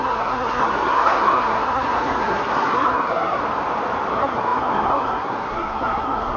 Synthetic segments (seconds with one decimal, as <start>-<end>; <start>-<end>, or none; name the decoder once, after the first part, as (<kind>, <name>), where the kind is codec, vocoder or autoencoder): 0.0-3.4 (codec, SNAC); 4.1-6.4